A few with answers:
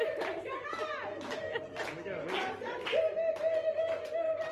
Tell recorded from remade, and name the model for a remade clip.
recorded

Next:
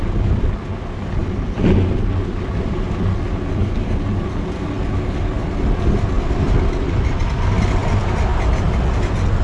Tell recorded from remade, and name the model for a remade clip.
recorded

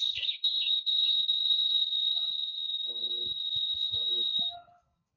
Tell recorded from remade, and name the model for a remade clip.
remade, codec, SNAC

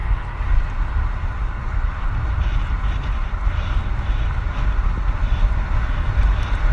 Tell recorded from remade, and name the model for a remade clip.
recorded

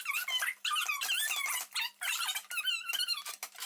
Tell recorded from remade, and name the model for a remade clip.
recorded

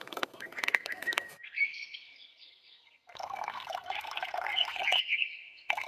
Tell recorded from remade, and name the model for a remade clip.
remade, codec, SNAC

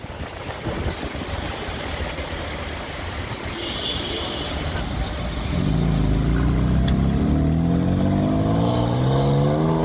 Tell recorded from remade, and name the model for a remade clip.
recorded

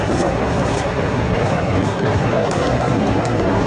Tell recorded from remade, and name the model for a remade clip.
remade, codec, SNAC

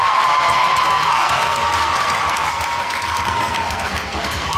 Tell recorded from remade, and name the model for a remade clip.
remade, codec, SNAC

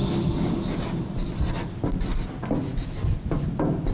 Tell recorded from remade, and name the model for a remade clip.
recorded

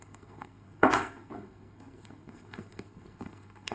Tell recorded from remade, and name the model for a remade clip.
remade, codec, SNAC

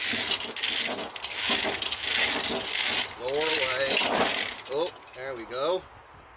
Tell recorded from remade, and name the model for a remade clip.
recorded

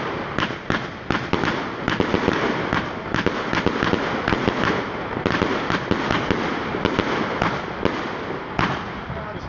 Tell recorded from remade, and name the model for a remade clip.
recorded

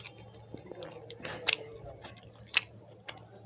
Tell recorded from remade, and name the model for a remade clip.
recorded